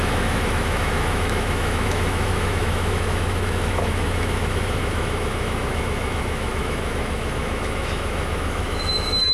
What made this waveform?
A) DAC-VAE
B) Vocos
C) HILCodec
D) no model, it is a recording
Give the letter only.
A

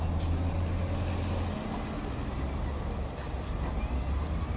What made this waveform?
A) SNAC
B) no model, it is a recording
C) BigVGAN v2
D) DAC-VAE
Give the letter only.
B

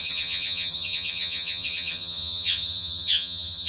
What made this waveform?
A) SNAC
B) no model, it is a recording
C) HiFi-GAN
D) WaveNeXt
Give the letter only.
C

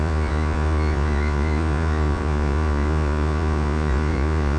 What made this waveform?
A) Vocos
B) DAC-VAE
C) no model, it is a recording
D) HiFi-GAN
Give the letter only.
A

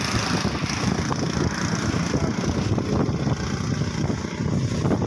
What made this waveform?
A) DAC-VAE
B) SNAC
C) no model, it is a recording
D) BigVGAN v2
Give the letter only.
C